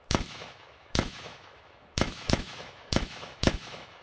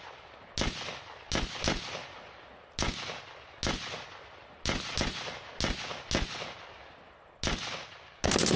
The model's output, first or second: first